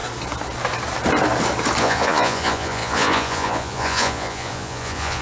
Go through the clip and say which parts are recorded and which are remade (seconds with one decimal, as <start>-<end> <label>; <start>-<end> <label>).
0.0-1.8 recorded; 1.8-5.2 remade